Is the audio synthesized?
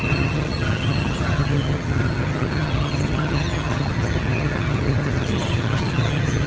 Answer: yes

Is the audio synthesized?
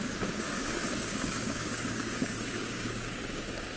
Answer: yes